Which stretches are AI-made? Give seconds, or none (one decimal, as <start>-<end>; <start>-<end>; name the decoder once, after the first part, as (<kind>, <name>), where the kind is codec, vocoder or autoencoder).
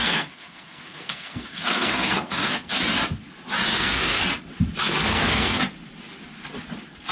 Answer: 0.0-2.8 (codec, SNAC); 3.7-4.2; 4.8-5.6